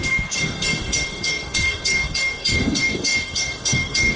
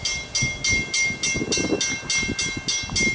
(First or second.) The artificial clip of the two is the first